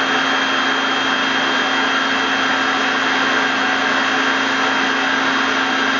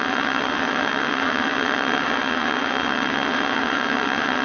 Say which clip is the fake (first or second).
second